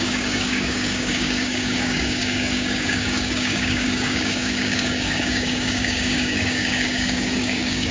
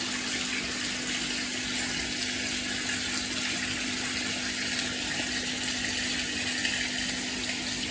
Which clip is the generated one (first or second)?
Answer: first